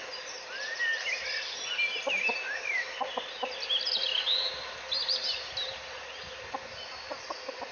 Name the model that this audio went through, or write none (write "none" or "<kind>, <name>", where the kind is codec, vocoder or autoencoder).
none